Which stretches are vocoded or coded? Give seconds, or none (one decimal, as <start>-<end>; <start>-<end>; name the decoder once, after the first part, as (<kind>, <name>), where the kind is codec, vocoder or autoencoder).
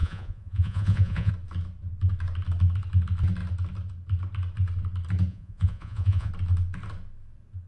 0.0-1.3 (vocoder, Vocos); 5.3-6.3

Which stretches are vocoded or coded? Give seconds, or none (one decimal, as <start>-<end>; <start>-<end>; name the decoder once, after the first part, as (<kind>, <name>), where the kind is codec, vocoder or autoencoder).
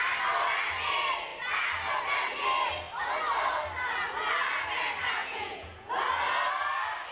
5.2-5.9 (vocoder, Vocos)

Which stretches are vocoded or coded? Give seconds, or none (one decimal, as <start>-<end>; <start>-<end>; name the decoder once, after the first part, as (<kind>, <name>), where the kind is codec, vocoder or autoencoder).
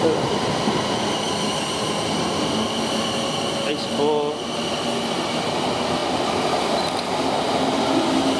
none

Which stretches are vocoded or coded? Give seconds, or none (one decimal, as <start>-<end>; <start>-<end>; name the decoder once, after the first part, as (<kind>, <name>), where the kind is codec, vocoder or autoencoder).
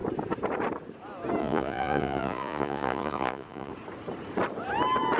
1.4-3.7 (vocoder, Vocos)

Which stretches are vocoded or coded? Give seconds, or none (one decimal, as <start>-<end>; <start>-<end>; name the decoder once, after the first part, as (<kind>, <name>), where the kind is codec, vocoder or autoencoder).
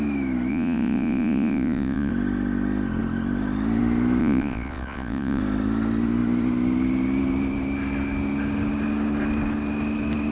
0.5-2.1 (vocoder, Vocos); 4.2-5.4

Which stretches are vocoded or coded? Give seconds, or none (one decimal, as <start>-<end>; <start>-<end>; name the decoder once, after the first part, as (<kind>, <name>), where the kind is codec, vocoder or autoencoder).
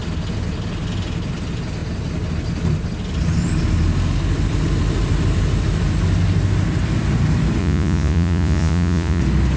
7.6-9.2 (vocoder, Vocos)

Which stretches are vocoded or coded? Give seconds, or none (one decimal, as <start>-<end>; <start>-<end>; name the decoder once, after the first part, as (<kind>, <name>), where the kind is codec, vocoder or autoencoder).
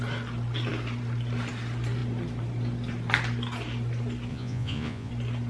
4.3-5.1 (vocoder, Vocos)